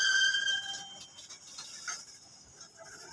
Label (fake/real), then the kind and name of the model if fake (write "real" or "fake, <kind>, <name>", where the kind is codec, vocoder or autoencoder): real